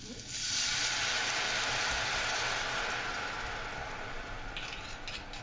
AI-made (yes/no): no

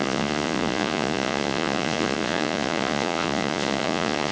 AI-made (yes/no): yes